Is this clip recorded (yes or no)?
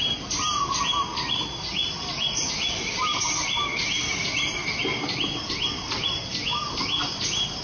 yes